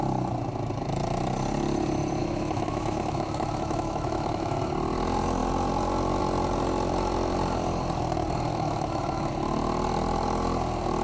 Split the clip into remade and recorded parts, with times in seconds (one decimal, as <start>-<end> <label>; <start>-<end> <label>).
0.0-2.2 recorded; 2.2-4.6 remade; 4.6-8.5 recorded; 8.5-9.3 remade; 9.3-11.0 recorded